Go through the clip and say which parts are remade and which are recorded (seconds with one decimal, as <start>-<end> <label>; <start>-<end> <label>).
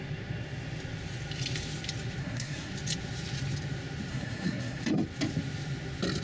0.0-2.2 recorded; 2.2-2.7 remade; 2.7-4.1 recorded; 4.1-4.8 remade; 4.8-6.2 recorded